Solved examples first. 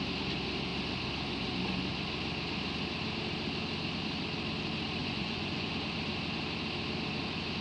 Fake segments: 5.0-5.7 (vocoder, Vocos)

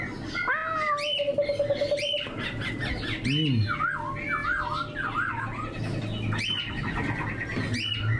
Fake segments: none

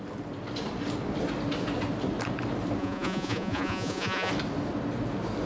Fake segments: 2.8-4.3 (vocoder, Vocos)

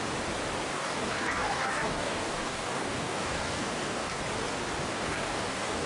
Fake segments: 0.7-4.2 (codec, DAC); 4.9-5.9

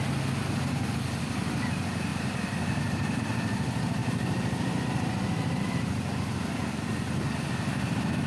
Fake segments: 2.1-3.2 (vocoder, BigVGAN v2)

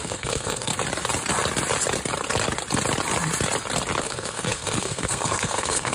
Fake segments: 0.0-0.7 (codec, SNAC); 4.0-5.9